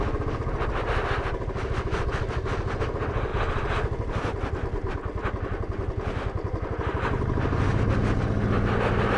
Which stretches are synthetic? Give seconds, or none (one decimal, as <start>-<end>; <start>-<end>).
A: none

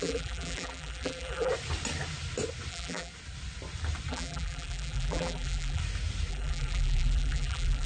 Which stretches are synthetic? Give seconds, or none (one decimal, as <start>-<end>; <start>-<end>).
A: 0.0-1.5; 2.7-3.1; 4.1-5.8; 6.3-7.9